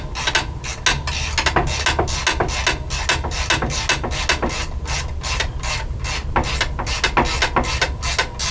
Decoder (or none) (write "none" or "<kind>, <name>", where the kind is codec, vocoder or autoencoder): none